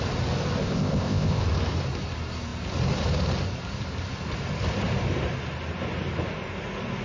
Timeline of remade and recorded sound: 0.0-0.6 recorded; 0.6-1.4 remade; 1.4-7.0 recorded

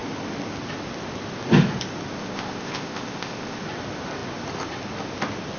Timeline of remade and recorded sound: 0.0-2.2 recorded; 2.2-3.6 remade; 3.6-5.6 recorded

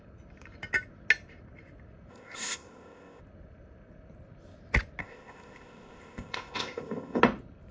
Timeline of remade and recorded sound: 0.0-2.1 recorded; 2.1-3.2 remade; 3.2-5.0 recorded; 5.0-7.2 remade; 7.2-7.7 recorded

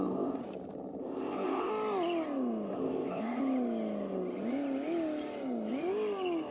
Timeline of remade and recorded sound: 0.0-0.4 remade; 0.4-1.0 recorded; 1.0-1.7 remade; 1.7-2.7 recorded; 2.7-3.4 remade; 3.4-6.5 recorded

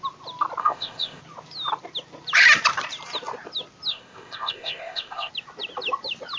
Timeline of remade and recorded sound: 0.0-0.6 recorded; 0.6-1.2 remade; 1.2-3.9 recorded; 3.9-5.3 remade; 5.3-6.4 recorded